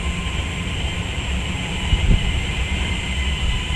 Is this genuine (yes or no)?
no